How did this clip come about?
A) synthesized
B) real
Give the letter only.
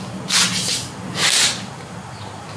B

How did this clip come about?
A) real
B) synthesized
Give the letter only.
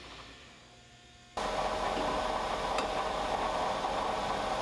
A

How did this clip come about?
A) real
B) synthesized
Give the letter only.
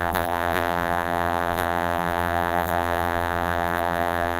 B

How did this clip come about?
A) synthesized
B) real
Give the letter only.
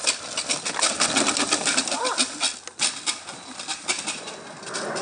B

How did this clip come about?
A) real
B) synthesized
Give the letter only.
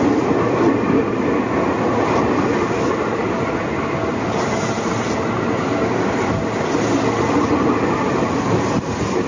A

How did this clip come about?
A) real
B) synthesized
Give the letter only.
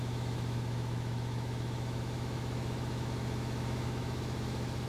B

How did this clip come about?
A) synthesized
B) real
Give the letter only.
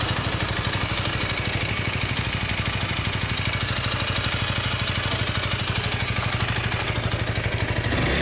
B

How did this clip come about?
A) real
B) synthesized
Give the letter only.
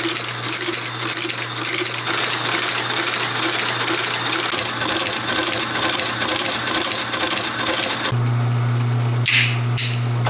A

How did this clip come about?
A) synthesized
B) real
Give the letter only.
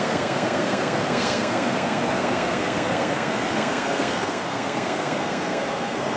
A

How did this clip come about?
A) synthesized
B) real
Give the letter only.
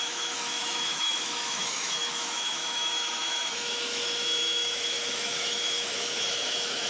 A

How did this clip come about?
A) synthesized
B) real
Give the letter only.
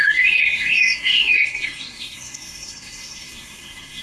A